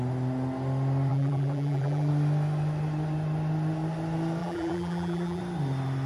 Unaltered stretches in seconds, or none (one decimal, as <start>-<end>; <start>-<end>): 0.0-1.1; 2.1-4.4; 5.4-6.1